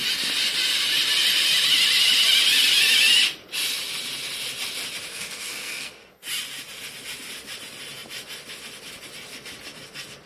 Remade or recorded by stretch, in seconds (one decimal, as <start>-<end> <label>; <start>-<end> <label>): 0.0-5.1 recorded; 5.1-6.1 remade; 6.1-10.3 recorded